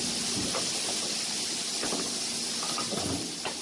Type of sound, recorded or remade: recorded